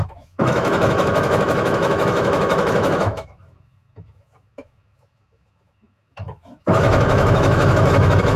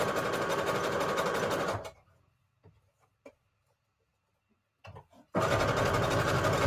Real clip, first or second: second